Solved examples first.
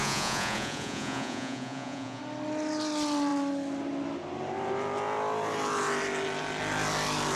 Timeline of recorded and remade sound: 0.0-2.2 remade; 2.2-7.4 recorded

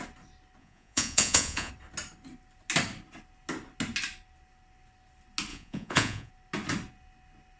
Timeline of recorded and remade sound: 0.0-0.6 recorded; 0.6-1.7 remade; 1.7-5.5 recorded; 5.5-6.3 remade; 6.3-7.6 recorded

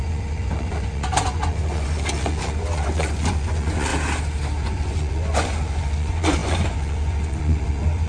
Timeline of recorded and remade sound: 0.0-3.9 remade; 3.9-4.6 recorded; 4.6-8.1 remade